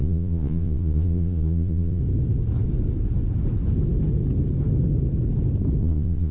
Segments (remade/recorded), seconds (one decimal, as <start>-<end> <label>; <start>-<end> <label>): 0.0-2.0 remade; 2.0-5.8 recorded; 5.8-6.3 remade